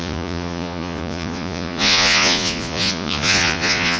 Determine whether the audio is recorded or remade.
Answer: remade